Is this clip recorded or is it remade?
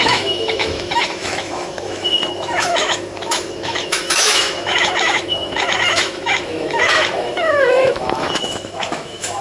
remade